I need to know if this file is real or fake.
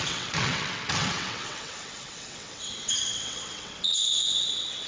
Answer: fake